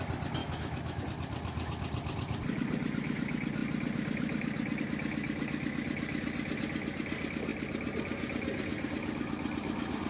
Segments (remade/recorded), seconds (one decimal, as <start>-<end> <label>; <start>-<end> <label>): 0.0-0.4 recorded; 0.4-1.0 remade; 1.0-10.1 recorded